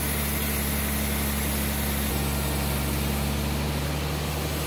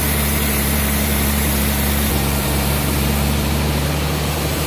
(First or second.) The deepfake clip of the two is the second